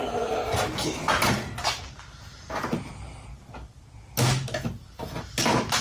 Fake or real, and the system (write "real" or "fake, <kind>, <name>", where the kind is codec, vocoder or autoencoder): real